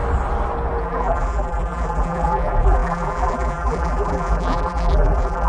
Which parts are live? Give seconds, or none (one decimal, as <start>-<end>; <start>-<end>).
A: 0.0-0.8

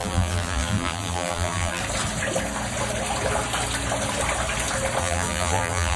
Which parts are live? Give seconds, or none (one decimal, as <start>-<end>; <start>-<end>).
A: 1.8-5.0